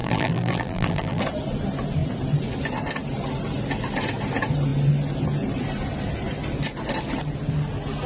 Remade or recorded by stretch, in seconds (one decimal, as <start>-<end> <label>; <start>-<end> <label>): 0.0-1.2 remade; 1.2-8.1 recorded